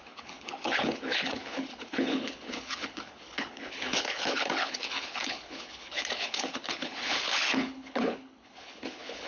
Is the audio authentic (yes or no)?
no